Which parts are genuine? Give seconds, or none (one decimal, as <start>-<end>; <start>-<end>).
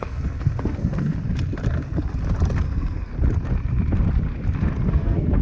1.1-2.6; 3.1-4.9